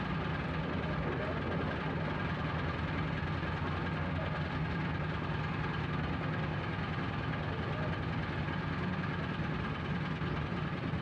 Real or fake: real